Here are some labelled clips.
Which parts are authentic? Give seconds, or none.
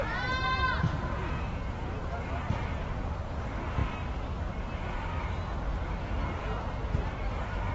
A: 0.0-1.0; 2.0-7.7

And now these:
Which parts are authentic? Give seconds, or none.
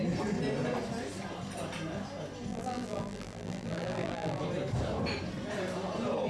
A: 0.0-2.5; 4.4-6.3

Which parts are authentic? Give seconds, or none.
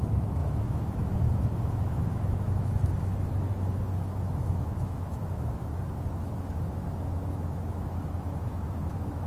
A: none